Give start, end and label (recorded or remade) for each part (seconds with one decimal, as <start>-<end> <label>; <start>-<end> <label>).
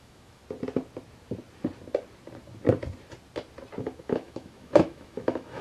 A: 0.0-0.4 remade; 0.4-3.8 recorded; 3.8-5.6 remade